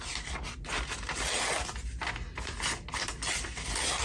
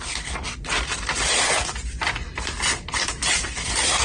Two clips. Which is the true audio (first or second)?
first